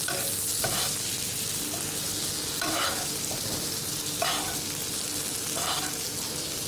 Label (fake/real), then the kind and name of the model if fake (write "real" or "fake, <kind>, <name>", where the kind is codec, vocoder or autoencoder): real